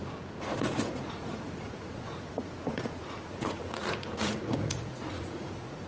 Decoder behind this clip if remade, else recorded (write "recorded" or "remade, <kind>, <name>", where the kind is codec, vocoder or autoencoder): remade, vocoder, Vocos